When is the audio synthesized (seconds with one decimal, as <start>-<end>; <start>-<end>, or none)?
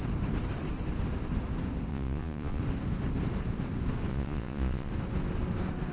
1.9-2.6; 4.1-4.9